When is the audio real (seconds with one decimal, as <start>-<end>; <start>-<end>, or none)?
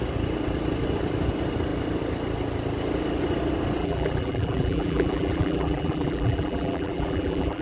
0.0-3.8